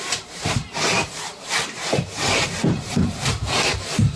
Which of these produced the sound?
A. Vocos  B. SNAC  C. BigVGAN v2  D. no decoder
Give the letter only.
C